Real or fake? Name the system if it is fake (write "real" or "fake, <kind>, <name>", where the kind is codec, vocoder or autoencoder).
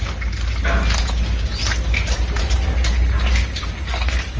real